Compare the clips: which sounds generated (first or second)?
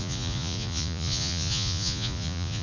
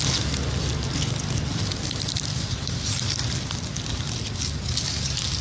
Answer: first